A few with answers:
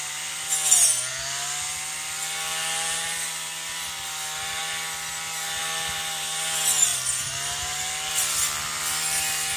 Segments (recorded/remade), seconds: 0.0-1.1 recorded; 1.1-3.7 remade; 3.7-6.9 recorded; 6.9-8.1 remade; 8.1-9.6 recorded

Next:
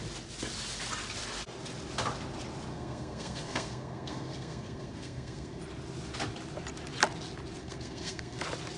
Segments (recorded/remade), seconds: 0.0-2.7 recorded; 2.7-5.6 remade; 5.6-7.6 recorded; 7.6-8.4 remade; 8.4-8.8 recorded

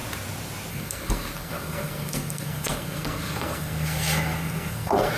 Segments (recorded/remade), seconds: 0.0-0.7 recorded; 0.7-5.2 remade